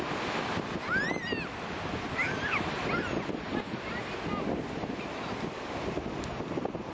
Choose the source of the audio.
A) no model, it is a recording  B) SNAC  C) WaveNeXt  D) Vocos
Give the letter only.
A